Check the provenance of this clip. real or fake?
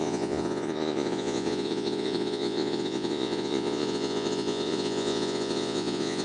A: fake